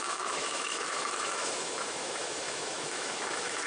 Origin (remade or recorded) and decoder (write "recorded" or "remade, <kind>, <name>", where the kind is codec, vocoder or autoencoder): remade, autoencoder, DAC-VAE